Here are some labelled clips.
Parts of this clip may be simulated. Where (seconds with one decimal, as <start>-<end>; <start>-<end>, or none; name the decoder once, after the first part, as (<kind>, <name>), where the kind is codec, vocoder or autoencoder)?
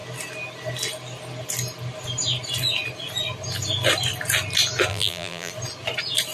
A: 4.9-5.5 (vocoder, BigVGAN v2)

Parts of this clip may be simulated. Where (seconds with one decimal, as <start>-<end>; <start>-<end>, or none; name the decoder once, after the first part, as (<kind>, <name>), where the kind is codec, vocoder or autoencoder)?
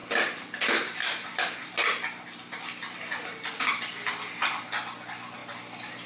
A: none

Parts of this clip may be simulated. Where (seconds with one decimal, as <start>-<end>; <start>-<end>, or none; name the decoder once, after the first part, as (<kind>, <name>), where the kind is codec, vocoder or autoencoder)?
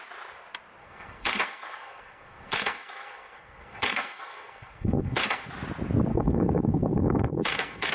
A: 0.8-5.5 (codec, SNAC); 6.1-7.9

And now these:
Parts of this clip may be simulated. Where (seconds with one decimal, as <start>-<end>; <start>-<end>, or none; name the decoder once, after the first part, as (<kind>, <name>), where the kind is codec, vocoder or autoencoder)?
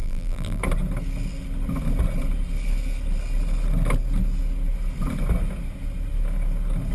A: 0.0-0.6 (vocoder, BigVGAN v2)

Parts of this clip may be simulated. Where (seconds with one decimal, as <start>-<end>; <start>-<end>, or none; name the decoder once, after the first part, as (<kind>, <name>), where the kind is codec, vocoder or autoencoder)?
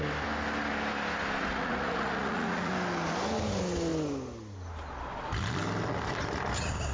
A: 1.4-2.7 (vocoder, Vocos)